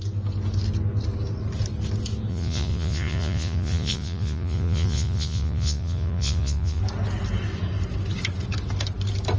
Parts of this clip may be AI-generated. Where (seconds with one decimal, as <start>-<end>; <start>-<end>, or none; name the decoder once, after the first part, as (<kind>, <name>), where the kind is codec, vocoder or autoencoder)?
2.3-6.8 (vocoder, Vocos)